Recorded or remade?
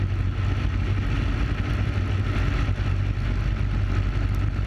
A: recorded